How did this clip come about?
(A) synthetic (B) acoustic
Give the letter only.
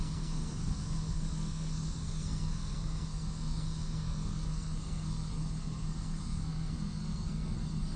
A